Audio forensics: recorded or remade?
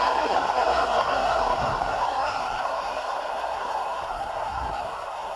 remade